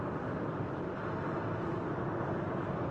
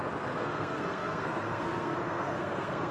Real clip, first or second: first